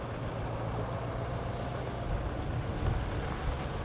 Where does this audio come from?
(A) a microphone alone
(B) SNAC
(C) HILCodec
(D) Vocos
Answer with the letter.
A